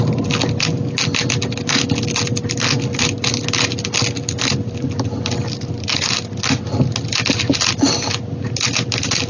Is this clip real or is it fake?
real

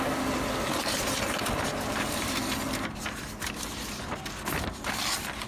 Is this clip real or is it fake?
real